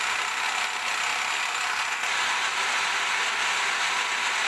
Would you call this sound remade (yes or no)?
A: no